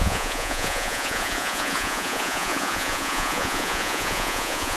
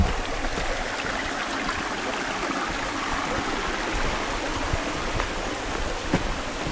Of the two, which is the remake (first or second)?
first